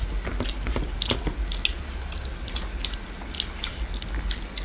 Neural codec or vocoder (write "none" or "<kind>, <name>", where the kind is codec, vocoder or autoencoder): none